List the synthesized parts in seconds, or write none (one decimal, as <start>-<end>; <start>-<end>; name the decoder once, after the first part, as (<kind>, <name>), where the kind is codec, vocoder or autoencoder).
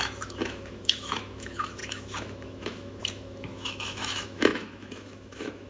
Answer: 0.0-5.7 (autoencoder, DAC-VAE)